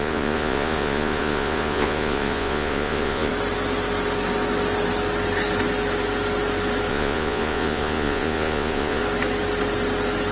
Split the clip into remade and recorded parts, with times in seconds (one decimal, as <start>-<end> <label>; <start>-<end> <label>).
0.0-3.3 remade; 3.3-6.9 recorded; 6.9-9.0 remade; 9.0-10.3 recorded

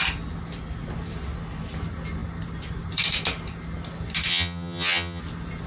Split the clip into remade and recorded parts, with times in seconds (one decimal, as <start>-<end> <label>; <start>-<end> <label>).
0.0-4.3 recorded; 4.3-5.2 remade; 5.2-5.7 recorded

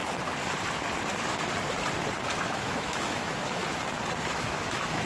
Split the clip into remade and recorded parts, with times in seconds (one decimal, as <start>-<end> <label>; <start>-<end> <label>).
0.0-2.4 recorded; 2.4-3.6 remade; 3.6-4.2 recorded; 4.2-5.1 remade

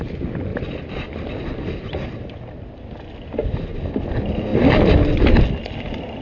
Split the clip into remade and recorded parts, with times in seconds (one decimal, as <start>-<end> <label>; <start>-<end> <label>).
0.0-0.5 recorded; 0.5-1.3 remade; 1.3-6.2 recorded

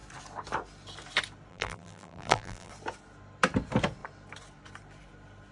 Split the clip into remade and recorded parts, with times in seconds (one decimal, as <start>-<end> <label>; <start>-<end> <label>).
0.0-1.5 recorded; 1.5-2.7 remade; 2.7-5.5 recorded

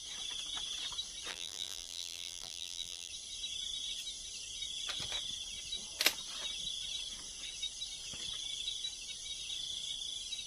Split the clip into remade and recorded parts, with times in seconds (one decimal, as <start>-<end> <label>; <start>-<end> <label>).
0.0-1.3 recorded; 1.3-3.1 remade; 3.1-10.5 recorded

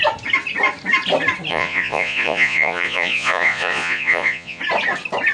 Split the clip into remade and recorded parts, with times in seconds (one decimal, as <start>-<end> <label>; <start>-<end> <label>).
0.0-1.5 recorded; 1.5-4.6 remade; 4.6-5.3 recorded

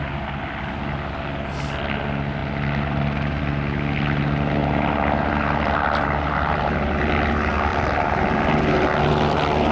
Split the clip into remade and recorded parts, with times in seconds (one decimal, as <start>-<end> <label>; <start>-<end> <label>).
0.0-2.4 recorded; 2.4-3.4 remade; 3.4-4.6 recorded; 4.6-6.9 remade; 6.9-7.7 recorded; 7.7-8.7 remade; 8.7-9.7 recorded